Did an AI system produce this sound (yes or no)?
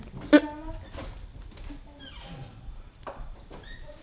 no